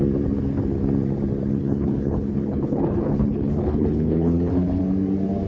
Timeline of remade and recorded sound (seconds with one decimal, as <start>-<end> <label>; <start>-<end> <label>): 0.0-1.5 recorded; 1.5-4.8 remade; 4.8-5.5 recorded